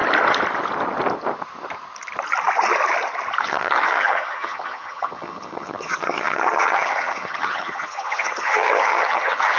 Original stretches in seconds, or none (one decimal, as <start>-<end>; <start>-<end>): 0.0-3.4